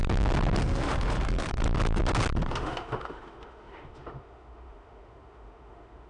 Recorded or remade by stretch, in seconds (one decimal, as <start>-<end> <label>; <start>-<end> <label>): 0.0-0.6 recorded; 0.6-1.6 remade; 1.6-2.4 recorded; 2.4-6.1 remade